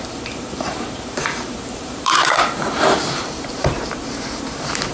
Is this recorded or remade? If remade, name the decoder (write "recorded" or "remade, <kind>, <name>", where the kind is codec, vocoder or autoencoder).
remade, vocoder, BigVGAN v2